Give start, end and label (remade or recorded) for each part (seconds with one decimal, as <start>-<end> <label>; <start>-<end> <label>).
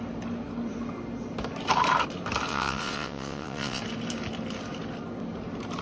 0.0-2.5 recorded; 2.5-3.8 remade; 3.8-5.8 recorded